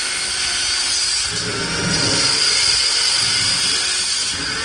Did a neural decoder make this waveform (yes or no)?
no